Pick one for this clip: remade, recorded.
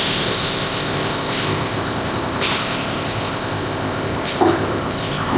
remade